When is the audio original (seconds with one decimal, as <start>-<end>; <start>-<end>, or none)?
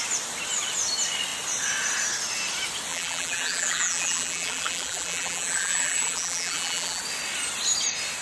0.0-2.9; 7.0-8.2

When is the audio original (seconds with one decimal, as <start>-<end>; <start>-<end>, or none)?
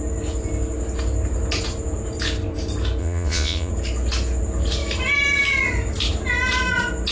0.0-3.0; 3.7-7.1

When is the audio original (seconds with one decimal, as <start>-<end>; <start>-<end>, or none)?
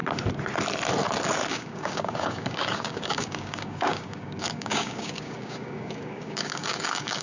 0.0-1.5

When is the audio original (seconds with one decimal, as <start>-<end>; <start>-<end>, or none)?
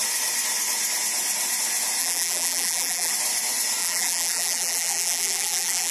0.0-2.0; 3.1-3.8